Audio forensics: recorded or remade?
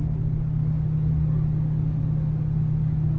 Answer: recorded